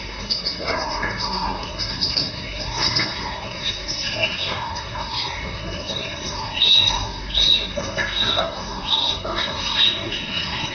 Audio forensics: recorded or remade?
remade